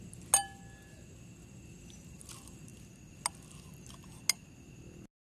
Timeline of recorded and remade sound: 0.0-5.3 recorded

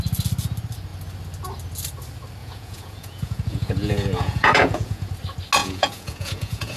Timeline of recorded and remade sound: 0.0-2.4 recorded; 2.4-5.1 remade; 5.1-5.6 recorded; 5.6-6.8 remade

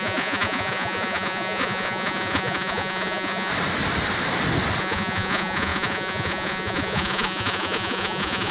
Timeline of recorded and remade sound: 0.0-3.5 remade; 3.5-4.8 recorded; 4.8-8.5 remade

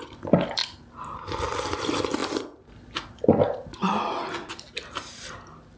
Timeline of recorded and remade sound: 0.0-5.8 recorded

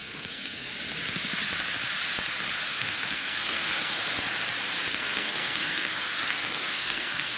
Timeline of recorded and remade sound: 0.0-0.7 remade; 0.7-2.7 recorded; 2.7-4.0 remade; 4.0-4.9 recorded; 4.9-7.4 remade

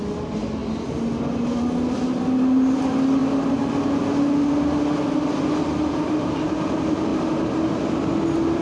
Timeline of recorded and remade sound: 0.0-8.6 recorded

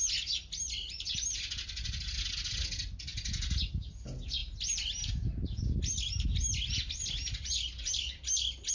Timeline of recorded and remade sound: 0.0-8.7 recorded